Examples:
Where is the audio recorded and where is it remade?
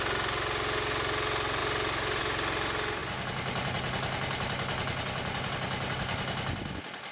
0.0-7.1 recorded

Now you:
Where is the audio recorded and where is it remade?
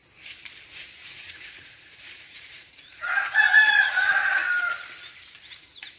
0.0-0.7 recorded; 0.7-4.4 remade; 4.4-5.4 recorded; 5.4-6.0 remade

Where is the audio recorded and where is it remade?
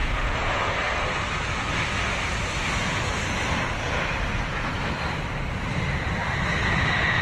0.0-0.8 remade; 0.8-4.3 recorded; 4.3-4.8 remade; 4.8-7.2 recorded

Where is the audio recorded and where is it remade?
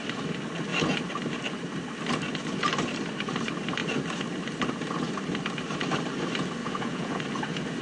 0.0-6.6 recorded; 6.6-7.2 remade; 7.2-7.8 recorded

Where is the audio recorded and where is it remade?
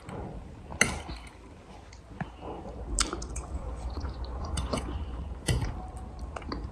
0.0-3.3 recorded; 3.3-5.7 remade; 5.7-6.7 recorded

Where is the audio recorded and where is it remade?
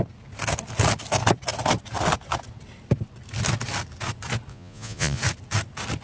0.0-4.5 recorded; 4.5-5.2 remade; 5.2-6.0 recorded